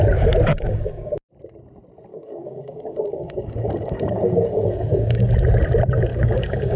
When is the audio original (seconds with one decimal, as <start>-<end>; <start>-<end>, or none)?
0.0-0.5; 1.1-2.1; 5.3-6.1